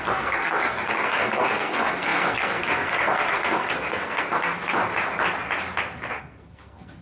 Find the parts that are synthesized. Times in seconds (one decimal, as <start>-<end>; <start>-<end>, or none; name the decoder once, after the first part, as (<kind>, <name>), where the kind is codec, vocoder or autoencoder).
0.0-4.8 (codec, SNAC); 6.2-7.0

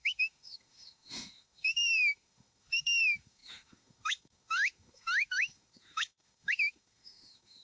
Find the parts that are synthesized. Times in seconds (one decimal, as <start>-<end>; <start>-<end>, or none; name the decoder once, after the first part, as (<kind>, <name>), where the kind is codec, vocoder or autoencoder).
0.0-7.6 (autoencoder, DAC-VAE)

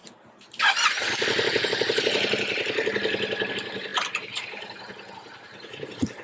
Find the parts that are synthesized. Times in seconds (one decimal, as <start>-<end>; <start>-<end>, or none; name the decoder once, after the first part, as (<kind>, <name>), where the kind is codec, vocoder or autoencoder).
none

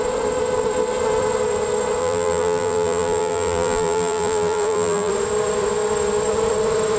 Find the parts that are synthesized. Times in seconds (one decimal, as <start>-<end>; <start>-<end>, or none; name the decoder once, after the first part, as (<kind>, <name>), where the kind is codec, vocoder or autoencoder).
2.0-5.1 (vocoder, BigVGAN v2)

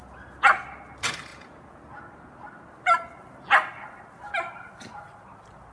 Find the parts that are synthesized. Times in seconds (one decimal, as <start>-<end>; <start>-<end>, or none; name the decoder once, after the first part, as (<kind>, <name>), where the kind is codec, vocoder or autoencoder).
1.3-1.8 (vocoder, Vocos)